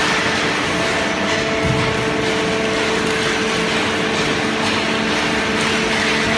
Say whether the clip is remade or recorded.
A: recorded